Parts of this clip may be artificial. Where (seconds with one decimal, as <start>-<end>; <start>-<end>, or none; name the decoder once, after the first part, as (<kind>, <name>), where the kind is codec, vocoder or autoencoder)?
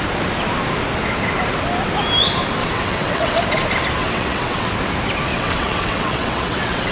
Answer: 2.6-3.4 (vocoder, WaveNeXt); 4.0-4.7; 5.3-6.9